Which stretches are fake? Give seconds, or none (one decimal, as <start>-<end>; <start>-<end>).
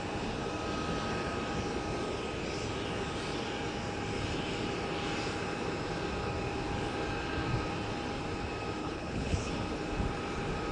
8.8-9.5